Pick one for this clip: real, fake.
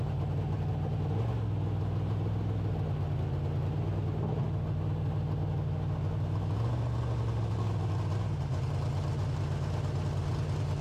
real